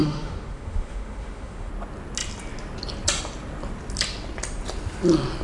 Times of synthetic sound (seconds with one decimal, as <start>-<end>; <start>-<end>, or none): 0.0-1.7

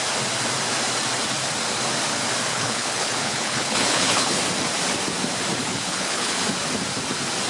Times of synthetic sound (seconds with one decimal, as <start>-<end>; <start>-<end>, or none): 2.5-4.4; 5.6-6.4

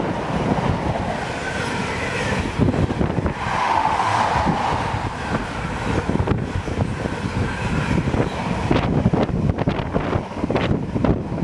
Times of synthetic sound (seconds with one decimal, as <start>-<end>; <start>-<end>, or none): 3.6-4.2

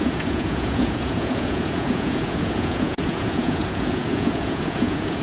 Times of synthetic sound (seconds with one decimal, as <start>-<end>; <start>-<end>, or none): 0.0-5.2

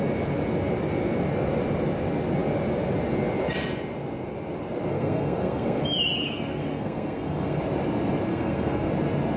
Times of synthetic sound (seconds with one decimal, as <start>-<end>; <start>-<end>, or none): 4.9-5.8; 6.2-7.6; 8.3-8.9